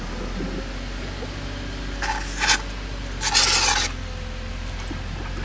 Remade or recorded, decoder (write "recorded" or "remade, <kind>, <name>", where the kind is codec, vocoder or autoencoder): recorded